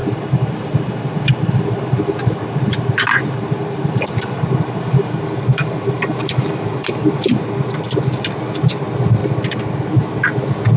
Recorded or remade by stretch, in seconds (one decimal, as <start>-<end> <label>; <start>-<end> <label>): 0.0-5.2 remade; 5.2-10.8 recorded